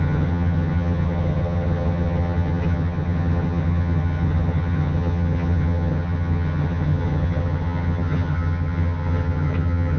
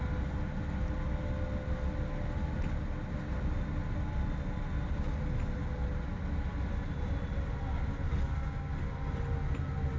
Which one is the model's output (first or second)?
first